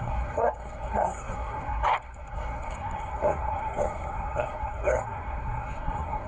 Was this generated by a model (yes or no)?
yes